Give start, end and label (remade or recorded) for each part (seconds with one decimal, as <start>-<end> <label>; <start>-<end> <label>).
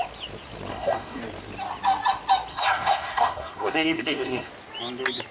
0.0-0.7 recorded; 0.7-1.2 remade; 1.2-2.5 recorded; 2.5-4.5 remade; 4.5-5.3 recorded